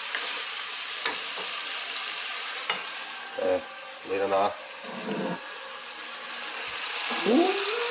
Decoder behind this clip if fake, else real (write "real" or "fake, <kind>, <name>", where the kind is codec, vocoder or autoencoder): real